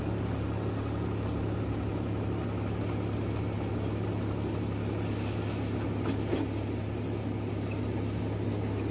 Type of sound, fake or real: real